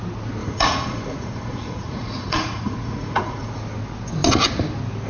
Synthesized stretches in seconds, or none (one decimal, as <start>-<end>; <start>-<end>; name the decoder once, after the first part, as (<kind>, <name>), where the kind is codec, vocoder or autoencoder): 0.4-3.5 (vocoder, Vocos)